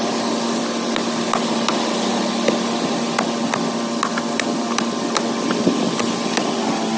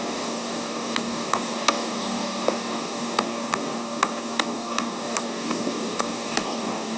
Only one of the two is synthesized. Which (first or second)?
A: second